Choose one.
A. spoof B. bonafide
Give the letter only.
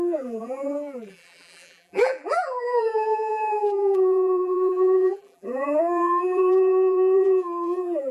A